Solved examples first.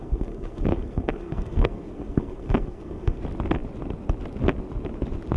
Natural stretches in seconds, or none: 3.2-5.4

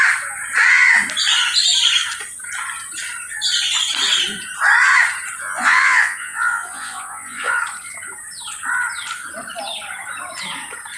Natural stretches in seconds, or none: 0.0-5.4; 7.6-11.0